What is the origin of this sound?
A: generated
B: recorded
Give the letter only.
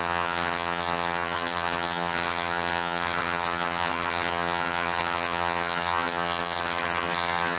A